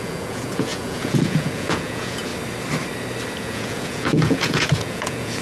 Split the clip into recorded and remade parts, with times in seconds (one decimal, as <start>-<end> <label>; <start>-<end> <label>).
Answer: 0.0-2.3 remade; 2.3-3.4 recorded; 3.4-5.4 remade

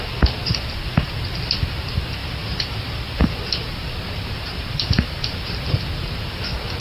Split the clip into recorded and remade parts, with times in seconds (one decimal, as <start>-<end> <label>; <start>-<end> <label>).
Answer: 0.0-2.2 recorded; 2.2-6.2 remade; 6.2-6.8 recorded

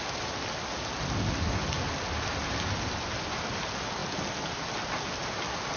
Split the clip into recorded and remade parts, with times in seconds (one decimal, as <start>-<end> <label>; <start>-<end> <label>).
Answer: 0.0-5.8 recorded

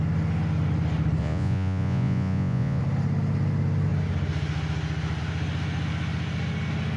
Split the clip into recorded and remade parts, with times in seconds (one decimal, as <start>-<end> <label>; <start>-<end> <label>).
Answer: 0.0-1.2 recorded; 1.2-2.8 remade; 2.8-7.0 recorded

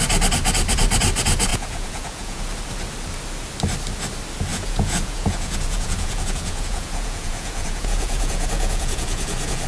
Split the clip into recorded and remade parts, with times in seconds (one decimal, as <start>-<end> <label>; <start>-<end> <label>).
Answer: 0.0-1.5 recorded; 1.5-2.4 remade; 2.4-4.5 recorded; 4.5-9.7 remade

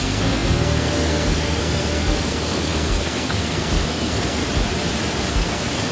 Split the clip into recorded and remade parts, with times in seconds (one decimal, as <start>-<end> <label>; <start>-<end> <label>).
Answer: 0.0-4.4 remade; 4.4-5.3 recorded; 5.3-5.9 remade